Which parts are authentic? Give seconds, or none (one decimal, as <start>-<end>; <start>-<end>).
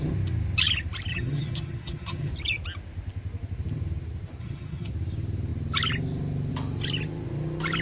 0.0-1.1; 2.3-4.4; 4.9-7.8